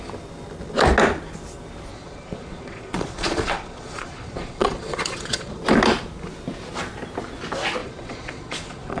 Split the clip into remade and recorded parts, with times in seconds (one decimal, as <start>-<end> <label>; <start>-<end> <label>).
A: 0.0-1.9 recorded; 1.9-5.6 remade; 5.6-7.8 recorded; 7.8-9.0 remade